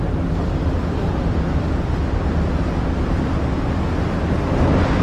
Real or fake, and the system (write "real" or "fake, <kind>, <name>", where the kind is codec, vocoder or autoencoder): real